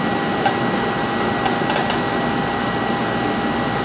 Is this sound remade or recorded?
recorded